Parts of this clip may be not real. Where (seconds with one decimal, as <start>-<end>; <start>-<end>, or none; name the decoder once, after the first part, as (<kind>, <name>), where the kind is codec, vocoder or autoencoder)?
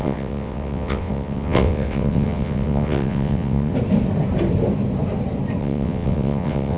0.0-3.7 (vocoder, WaveNeXt); 5.6-6.8